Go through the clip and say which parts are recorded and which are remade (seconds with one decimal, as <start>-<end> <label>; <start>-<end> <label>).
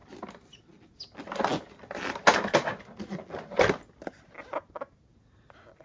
0.0-5.8 recorded